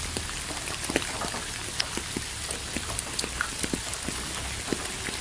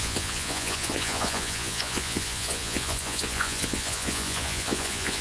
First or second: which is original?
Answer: first